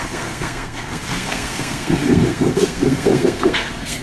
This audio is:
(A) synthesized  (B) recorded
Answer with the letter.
A